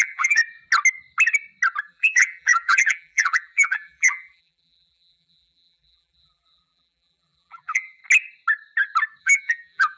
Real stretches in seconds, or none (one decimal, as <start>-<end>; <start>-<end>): 0.4-1.8; 8.0-9.2